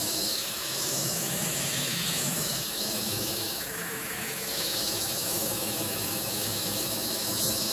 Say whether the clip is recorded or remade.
remade